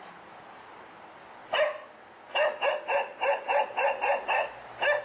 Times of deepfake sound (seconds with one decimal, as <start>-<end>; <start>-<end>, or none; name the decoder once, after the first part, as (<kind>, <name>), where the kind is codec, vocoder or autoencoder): 3.1-5.0 (vocoder, BigVGAN v2)